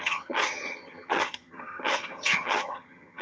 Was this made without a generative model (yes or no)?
no